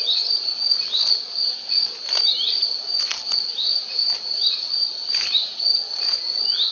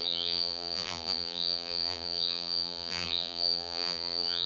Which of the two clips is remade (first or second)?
second